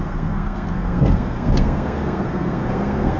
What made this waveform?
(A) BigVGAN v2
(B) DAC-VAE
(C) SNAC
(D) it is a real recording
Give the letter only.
C